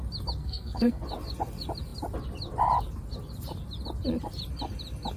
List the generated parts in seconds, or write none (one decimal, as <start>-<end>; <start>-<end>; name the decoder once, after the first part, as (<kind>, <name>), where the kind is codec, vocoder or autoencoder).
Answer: 0.4-1.0 (codec, SNAC)